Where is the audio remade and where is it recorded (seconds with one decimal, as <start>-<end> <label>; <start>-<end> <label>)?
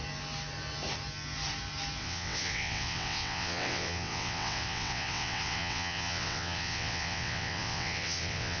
0.0-2.0 recorded; 2.0-8.6 remade